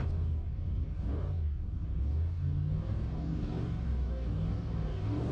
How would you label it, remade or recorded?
remade